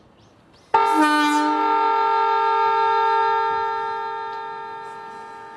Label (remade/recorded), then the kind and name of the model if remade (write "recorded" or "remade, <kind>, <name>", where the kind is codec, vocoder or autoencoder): recorded